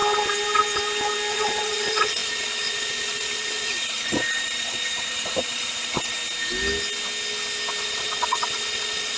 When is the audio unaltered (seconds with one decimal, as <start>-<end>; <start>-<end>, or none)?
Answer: 0.0-1.3; 6.2-7.8